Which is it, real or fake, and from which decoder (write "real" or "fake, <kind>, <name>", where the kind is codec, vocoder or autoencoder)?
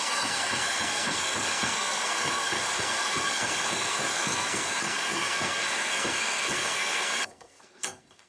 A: fake, codec, SNAC